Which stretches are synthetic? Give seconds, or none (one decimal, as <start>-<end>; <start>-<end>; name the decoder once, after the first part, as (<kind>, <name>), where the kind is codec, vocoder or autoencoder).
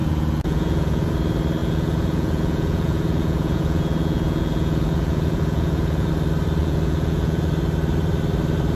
0.0-1.1 (vocoder, Vocos); 1.6-6.1; 6.6-7.5